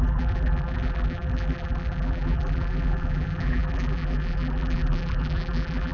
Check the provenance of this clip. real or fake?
fake